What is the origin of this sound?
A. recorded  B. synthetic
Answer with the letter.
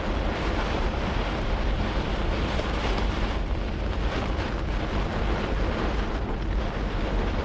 B